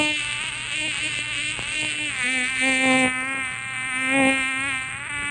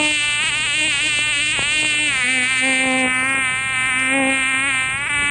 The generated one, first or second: first